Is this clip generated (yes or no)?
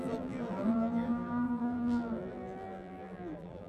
yes